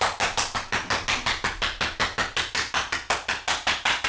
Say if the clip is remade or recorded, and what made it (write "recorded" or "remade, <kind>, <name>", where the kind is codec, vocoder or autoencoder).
recorded